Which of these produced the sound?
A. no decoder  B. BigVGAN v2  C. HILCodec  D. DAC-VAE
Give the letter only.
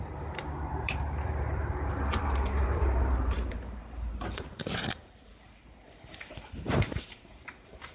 B